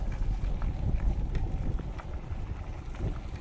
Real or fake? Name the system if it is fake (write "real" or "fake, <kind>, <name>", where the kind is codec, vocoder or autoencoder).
real